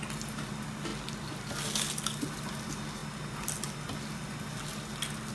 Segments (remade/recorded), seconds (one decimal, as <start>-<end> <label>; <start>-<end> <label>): 0.0-5.3 recorded